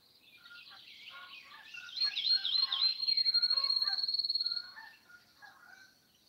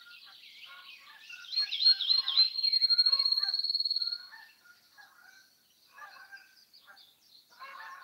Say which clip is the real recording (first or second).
second